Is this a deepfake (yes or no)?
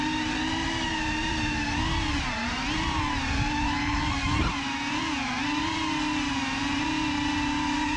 yes